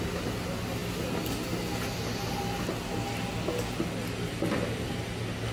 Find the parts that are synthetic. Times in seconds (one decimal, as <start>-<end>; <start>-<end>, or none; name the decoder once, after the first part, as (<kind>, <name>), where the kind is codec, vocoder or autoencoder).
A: none